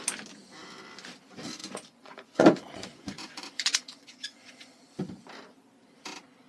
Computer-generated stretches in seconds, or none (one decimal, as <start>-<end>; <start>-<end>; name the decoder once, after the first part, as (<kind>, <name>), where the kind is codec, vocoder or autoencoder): 1.6-4.8 (vocoder, Vocos)